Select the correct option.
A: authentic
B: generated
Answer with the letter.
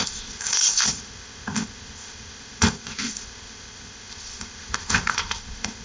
B